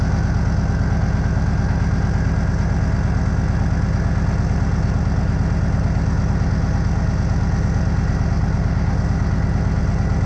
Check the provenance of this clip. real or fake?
real